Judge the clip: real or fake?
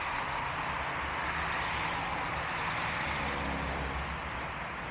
real